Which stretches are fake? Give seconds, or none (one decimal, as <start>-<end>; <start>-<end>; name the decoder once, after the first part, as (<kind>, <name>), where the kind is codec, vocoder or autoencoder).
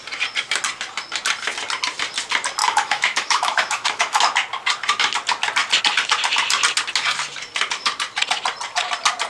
2.6-4.2 (autoencoder, DAC-VAE)